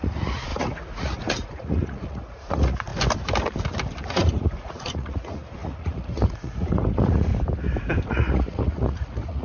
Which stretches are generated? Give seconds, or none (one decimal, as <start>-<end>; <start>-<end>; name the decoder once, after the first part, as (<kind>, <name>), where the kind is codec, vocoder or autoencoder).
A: 0.0-2.9 (vocoder, Vocos); 4.1-7.3; 8.1-9.4